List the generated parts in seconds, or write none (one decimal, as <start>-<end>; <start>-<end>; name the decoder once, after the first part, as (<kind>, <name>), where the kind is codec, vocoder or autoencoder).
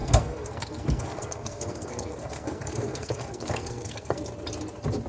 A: 0.0-4.2 (codec, SNAC)